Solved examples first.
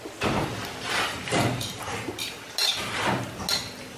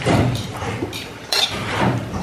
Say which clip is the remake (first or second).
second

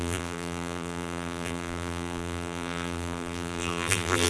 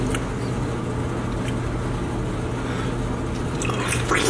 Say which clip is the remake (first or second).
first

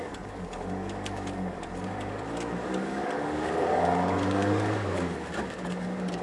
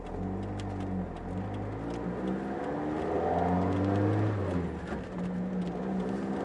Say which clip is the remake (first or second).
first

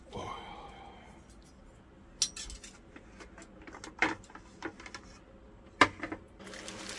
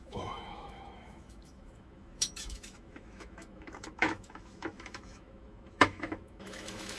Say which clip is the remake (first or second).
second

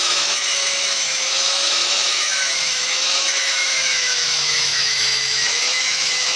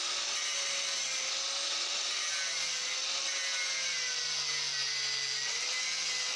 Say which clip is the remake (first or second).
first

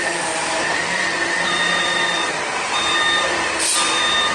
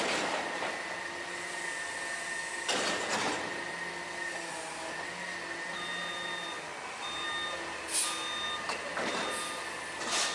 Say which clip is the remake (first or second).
first